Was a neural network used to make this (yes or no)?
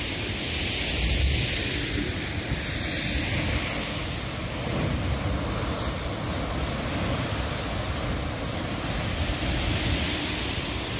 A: no